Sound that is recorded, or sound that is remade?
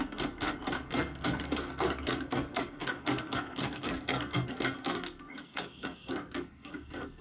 remade